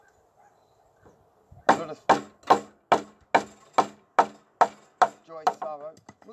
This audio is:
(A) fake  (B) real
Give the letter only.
B